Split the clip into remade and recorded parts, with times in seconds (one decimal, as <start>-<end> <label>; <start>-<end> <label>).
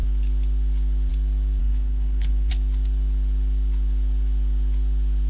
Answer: 0.0-1.6 recorded; 1.6-2.5 remade; 2.5-5.3 recorded